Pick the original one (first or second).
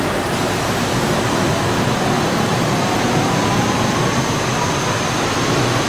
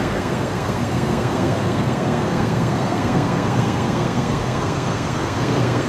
first